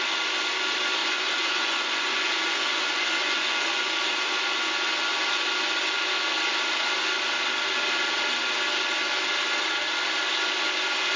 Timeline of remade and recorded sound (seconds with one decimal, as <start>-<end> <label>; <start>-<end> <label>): 0.0-1.0 recorded; 1.0-4.0 remade; 4.0-11.2 recorded